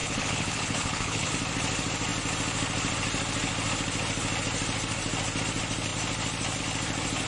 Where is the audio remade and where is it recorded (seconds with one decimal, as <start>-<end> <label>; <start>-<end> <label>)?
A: 0.0-1.3 remade; 1.3-7.3 recorded